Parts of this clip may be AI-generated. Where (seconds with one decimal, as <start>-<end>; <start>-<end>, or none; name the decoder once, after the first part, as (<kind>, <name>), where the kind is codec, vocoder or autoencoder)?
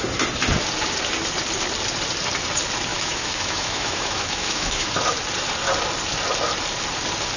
2.9-4.9 (autoencoder, DAC-VAE)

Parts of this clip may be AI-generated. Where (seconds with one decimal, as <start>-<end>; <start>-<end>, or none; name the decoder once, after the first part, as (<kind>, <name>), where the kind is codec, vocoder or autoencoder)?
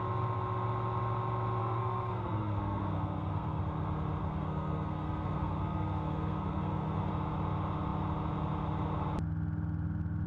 1.6-3.6 (codec, SNAC); 4.2-7.1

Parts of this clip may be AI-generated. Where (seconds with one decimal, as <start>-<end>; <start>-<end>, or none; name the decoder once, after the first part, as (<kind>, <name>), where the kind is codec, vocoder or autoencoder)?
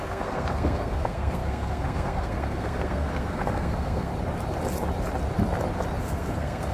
0.0-4.1 (codec, SNAC); 6.0-6.7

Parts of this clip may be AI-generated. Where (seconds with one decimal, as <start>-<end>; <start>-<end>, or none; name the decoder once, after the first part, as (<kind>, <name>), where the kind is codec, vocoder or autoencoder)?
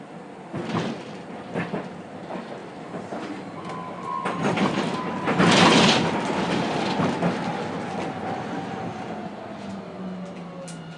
none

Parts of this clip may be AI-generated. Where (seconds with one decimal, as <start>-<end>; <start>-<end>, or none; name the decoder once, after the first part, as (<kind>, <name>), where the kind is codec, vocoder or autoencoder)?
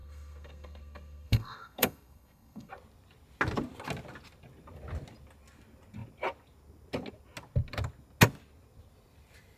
0.0-2.7 (codec, SNAC)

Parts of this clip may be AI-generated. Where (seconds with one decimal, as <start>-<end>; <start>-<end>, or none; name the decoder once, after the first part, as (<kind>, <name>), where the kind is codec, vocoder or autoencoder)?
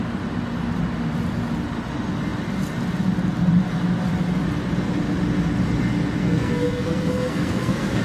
6.2-8.0 (codec, SNAC)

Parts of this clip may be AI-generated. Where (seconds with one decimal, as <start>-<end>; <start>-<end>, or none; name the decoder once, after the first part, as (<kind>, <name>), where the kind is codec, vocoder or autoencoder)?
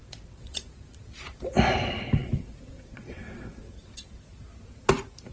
0.0-0.7 (vocoder, WaveNeXt); 2.2-4.3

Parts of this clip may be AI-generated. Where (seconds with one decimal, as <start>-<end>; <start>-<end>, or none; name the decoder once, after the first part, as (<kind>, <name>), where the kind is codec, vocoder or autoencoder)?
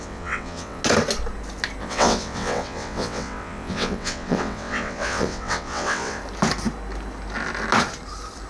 0.0-0.8 (vocoder, WaveNeXt); 1.8-6.2